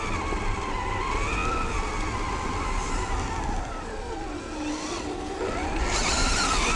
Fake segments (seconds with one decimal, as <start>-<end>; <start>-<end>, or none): none